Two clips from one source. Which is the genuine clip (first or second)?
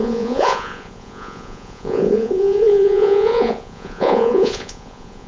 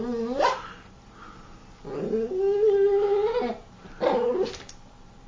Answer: second